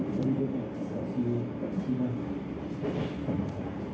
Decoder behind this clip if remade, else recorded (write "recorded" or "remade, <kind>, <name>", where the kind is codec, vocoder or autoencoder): recorded